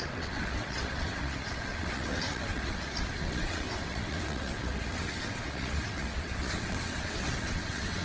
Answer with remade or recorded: remade